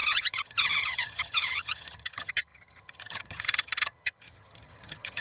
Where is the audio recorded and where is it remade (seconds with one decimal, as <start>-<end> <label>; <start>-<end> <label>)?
0.0-5.2 remade